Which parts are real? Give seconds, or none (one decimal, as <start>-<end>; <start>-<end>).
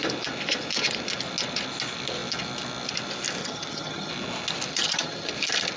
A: 0.0-3.4; 4.1-4.7; 5.3-5.8